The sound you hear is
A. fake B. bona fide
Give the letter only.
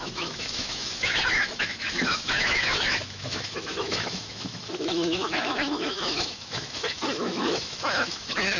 A